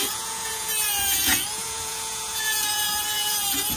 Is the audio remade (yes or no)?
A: yes